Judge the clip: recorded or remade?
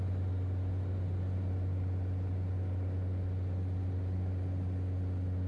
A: recorded